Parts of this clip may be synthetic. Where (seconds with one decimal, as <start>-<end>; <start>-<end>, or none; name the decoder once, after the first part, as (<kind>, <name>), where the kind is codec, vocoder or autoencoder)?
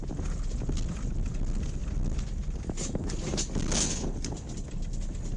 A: none